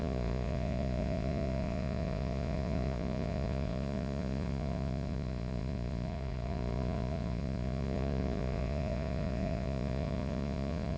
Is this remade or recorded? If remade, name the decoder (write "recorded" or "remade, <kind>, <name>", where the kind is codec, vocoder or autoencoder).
remade, vocoder, Vocos